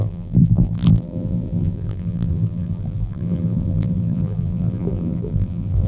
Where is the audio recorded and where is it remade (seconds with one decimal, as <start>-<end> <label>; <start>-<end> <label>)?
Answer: 0.0-5.9 remade